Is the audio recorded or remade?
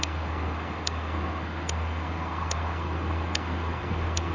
remade